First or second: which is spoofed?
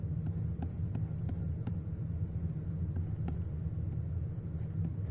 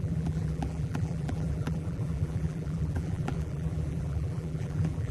second